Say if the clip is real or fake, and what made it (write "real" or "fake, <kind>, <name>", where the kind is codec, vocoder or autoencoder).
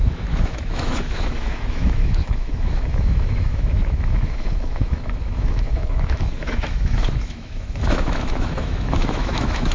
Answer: fake, autoencoder, DAC-VAE